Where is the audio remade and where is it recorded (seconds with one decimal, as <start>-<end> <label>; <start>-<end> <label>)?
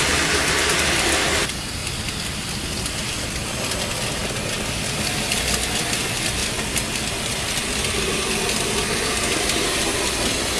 0.0-10.6 recorded